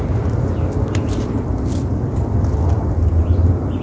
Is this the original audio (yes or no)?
no